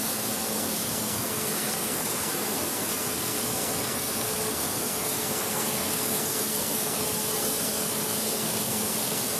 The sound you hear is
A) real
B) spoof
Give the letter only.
B